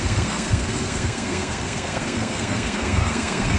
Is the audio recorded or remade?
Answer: remade